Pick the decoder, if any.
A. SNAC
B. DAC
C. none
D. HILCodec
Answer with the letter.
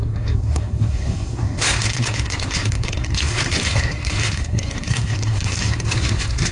A